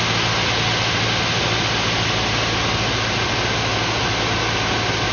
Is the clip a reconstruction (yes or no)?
no